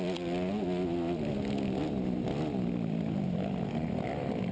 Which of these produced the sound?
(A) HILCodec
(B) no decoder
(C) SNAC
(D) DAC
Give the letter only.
B